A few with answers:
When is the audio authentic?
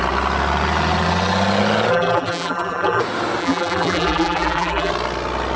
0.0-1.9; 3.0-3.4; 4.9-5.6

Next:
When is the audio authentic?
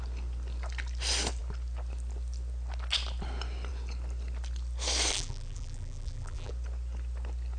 0.0-5.1; 6.5-7.6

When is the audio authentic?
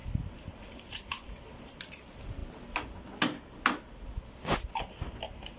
0.0-5.6